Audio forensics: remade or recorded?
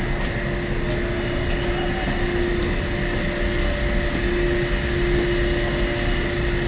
recorded